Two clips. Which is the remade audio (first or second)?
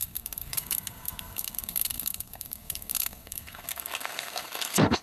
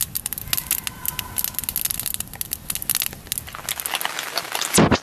first